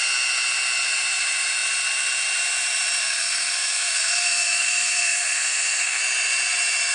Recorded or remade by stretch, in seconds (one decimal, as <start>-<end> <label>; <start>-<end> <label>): 0.0-3.0 recorded; 3.0-6.0 remade; 6.0-6.9 recorded